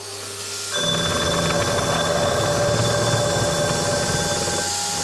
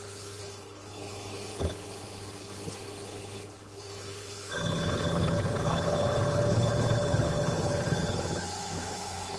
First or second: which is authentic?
first